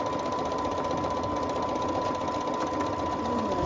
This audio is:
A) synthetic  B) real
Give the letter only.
B